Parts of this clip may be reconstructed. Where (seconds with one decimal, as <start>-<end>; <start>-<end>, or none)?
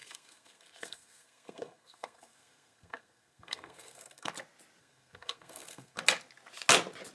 0.0-4.3; 4.8-6.0